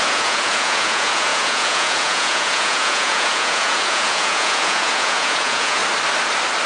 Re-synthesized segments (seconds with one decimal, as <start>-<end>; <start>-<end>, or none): 0.0-5.8

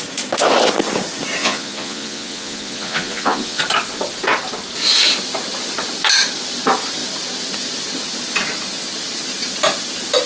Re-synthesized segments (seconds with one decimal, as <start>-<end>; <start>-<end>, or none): 1.4-3.6

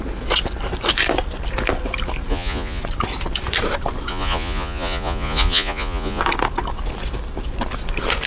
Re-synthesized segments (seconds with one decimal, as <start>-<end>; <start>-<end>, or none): 2.3-2.8; 4.1-6.2

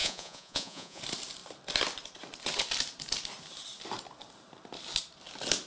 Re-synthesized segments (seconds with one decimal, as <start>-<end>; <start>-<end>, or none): 0.0-1.0

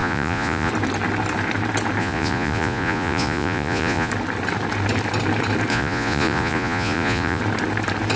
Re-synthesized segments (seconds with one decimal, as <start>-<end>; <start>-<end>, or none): 0.0-0.7; 2.0-4.1; 5.7-7.4

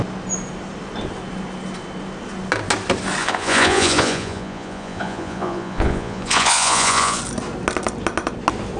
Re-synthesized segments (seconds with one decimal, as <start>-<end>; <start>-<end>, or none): 3.2-7.2

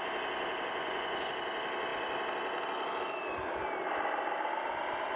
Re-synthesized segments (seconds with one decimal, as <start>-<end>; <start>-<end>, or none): 0.8-1.3

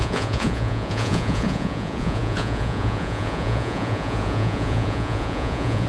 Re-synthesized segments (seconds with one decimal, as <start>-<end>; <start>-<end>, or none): 0.0-5.9